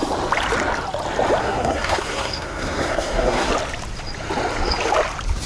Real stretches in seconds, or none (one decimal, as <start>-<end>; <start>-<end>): 0.0-1.4; 3.5-5.5